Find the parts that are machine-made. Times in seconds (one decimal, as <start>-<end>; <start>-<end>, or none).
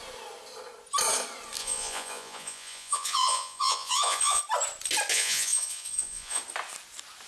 1.6-4.4; 5.1-6.4